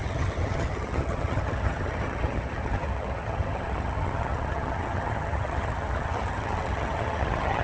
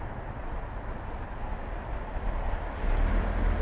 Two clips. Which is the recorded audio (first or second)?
second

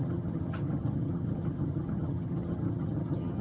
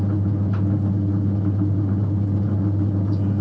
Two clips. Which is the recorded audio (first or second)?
second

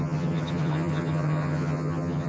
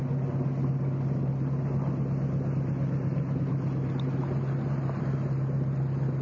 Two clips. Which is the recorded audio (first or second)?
second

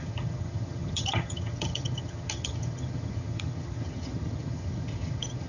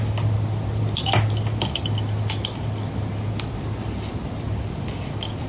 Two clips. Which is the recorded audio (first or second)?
second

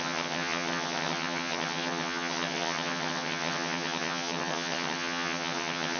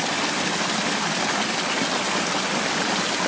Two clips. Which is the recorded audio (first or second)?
second